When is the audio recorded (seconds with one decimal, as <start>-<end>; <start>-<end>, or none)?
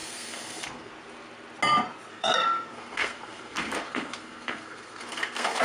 0.9-2.1